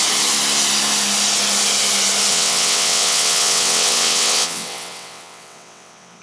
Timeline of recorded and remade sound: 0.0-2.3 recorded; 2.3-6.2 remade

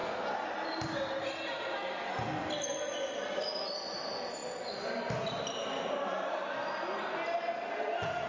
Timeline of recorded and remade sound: 0.0-8.3 recorded

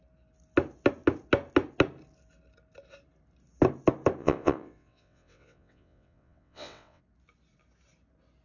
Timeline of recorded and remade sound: 0.0-4.2 recorded; 4.2-7.0 remade; 7.0-8.4 recorded

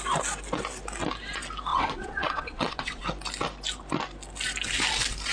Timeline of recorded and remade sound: 0.0-1.7 recorded; 1.7-3.0 remade; 3.0-5.3 recorded

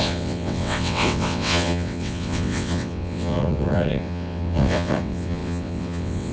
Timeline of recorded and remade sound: 0.0-6.3 remade

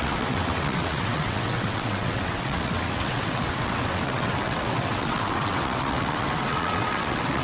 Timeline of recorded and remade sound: 0.0-7.4 remade

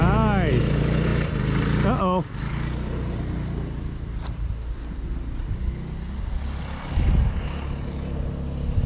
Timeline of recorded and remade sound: 0.0-8.9 recorded

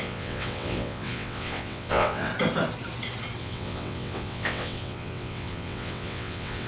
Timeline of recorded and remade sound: 0.0-2.3 remade; 2.3-3.4 recorded; 3.4-6.7 remade